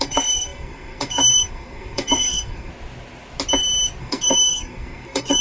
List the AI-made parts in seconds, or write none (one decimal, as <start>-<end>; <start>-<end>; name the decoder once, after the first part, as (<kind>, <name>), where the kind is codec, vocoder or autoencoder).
0.0-2.7 (codec, SNAC); 4.0-5.4